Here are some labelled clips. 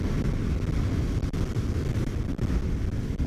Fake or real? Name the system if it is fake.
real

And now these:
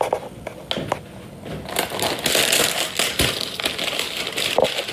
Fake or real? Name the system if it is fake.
real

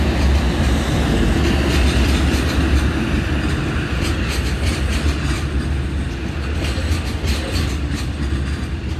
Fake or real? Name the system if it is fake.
real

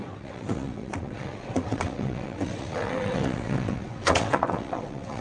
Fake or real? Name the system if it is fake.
fake, vocoder, WaveNeXt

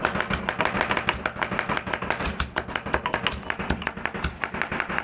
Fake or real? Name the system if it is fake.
real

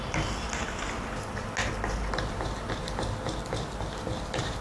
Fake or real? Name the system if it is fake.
real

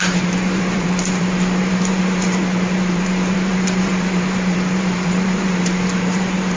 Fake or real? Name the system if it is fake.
fake, vocoder, BigVGAN v2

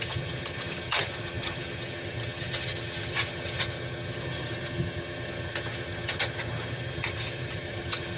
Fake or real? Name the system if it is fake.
fake, vocoder, HiFi-GAN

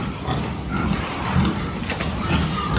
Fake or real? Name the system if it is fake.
real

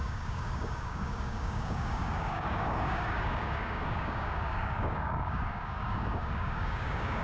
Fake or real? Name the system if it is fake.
fake, codec, DAC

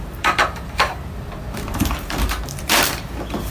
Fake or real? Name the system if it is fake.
fake, vocoder, BigVGAN v2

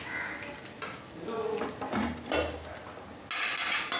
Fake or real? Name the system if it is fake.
real